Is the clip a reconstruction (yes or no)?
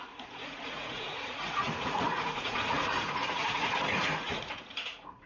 yes